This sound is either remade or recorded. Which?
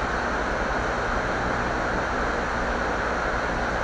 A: recorded